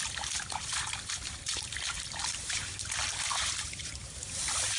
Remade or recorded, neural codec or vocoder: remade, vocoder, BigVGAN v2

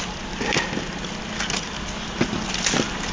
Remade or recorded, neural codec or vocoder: recorded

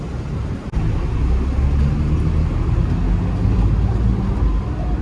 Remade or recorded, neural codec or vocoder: recorded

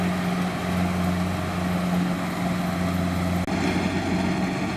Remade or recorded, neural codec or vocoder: recorded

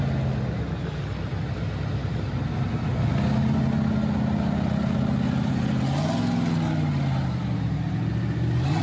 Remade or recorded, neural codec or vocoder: recorded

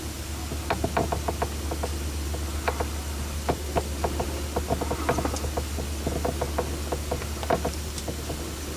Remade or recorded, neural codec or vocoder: recorded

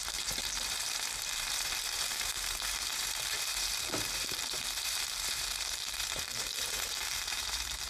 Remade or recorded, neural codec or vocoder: remade, vocoder, BigVGAN v2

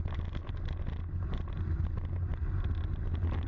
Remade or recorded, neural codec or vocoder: recorded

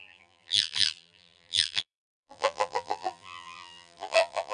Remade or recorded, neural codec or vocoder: remade, vocoder, BigVGAN v2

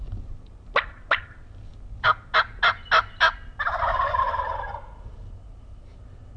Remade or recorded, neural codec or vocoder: recorded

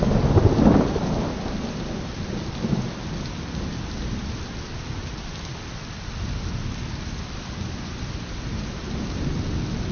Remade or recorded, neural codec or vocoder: recorded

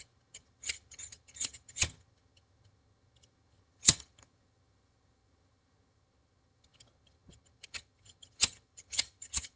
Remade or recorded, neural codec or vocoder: remade, vocoder, HiFi-GAN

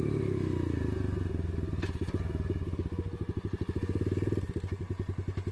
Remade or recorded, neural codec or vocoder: recorded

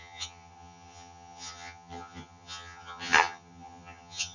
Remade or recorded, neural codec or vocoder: remade, vocoder, HiFi-GAN